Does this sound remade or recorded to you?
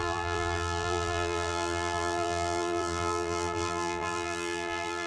remade